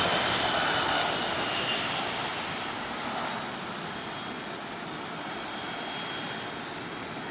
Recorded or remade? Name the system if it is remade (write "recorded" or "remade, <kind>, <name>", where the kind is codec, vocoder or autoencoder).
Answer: recorded